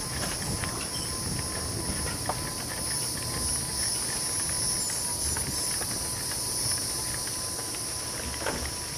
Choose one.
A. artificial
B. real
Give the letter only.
B